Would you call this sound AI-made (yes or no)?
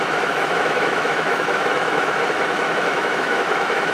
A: yes